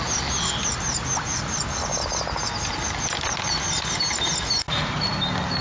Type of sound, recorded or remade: recorded